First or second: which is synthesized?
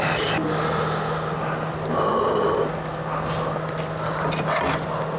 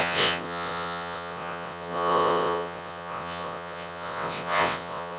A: second